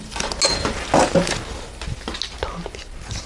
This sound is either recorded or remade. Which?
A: recorded